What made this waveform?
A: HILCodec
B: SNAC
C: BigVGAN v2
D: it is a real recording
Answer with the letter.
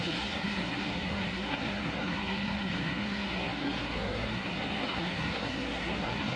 B